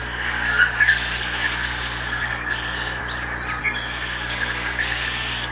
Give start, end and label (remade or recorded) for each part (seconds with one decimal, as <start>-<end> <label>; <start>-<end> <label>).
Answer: 0.0-3.0 remade; 3.0-3.6 recorded; 3.6-5.5 remade